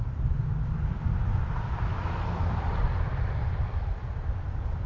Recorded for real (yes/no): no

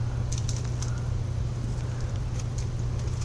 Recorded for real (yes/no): yes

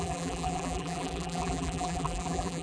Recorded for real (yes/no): no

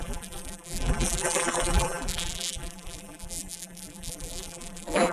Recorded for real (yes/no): no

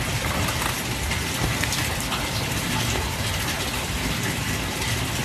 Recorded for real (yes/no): yes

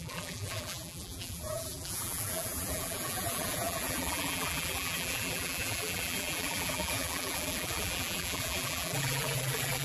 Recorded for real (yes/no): no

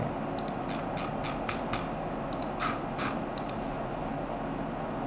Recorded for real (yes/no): yes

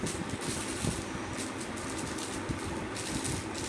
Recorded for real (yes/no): yes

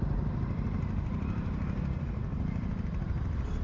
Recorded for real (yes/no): no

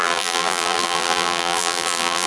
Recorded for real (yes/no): no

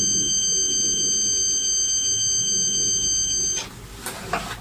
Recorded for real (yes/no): yes